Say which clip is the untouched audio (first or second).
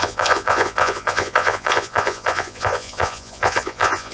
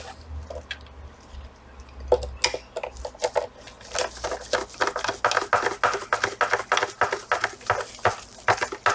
second